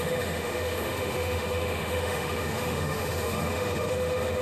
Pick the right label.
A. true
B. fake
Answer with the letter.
B